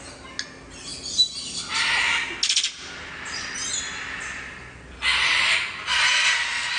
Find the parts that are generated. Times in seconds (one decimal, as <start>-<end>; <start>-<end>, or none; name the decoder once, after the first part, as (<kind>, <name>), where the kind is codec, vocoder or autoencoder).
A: none